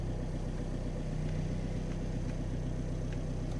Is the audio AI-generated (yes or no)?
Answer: no